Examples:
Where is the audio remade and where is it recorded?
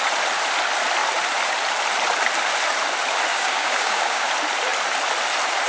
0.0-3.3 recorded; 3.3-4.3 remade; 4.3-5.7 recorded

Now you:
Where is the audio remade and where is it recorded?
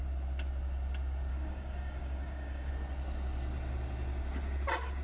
0.0-1.3 recorded; 1.3-2.7 remade; 2.7-5.0 recorded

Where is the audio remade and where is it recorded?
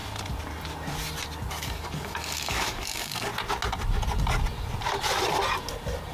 0.0-1.5 recorded; 1.5-3.3 remade; 3.3-6.1 recorded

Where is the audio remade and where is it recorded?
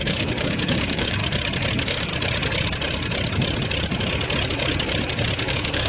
0.0-1.2 remade; 1.2-1.7 recorded; 1.7-2.1 remade; 2.1-5.5 recorded; 5.5-5.9 remade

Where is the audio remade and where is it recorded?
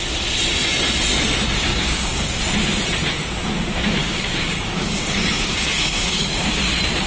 0.0-1.7 recorded; 1.7-2.4 remade; 2.4-4.0 recorded; 4.0-6.6 remade; 6.6-7.1 recorded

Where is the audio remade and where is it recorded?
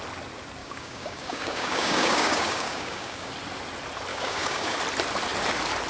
0.0-0.6 recorded; 0.6-3.3 remade; 3.3-4.1 recorded; 4.1-4.8 remade; 4.8-5.9 recorded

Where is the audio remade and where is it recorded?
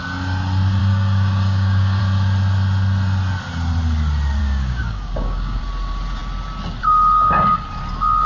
0.0-0.8 recorded; 0.8-2.0 remade; 2.0-4.4 recorded; 4.4-5.6 remade; 5.6-8.3 recorded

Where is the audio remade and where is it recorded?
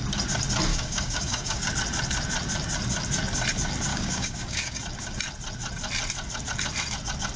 0.0-0.7 recorded; 0.7-1.7 remade; 1.7-3.9 recorded; 3.9-4.8 remade; 4.8-7.4 recorded